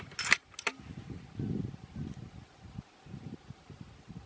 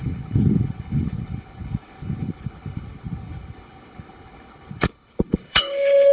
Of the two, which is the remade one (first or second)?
second